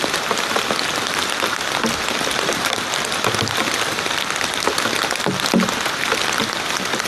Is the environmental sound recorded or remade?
recorded